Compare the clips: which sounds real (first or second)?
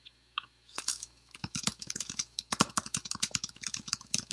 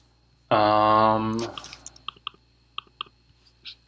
second